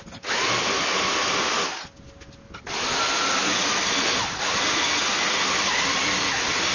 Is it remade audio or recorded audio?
recorded